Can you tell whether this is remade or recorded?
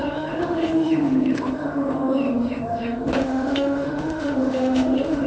remade